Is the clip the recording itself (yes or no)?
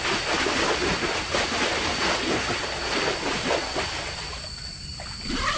yes